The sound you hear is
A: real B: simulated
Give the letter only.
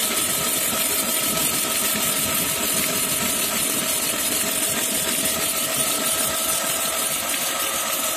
A